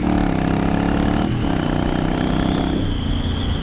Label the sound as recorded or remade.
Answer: recorded